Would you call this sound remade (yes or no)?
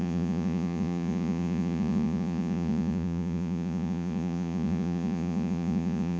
yes